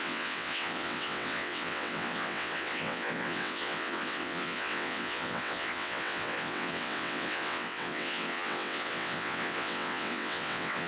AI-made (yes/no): yes